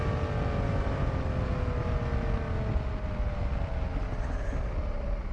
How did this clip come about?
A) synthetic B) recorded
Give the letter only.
B